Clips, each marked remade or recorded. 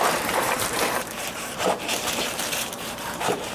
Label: remade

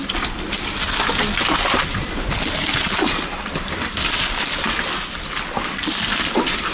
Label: recorded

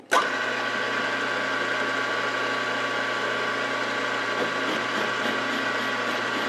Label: recorded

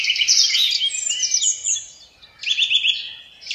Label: recorded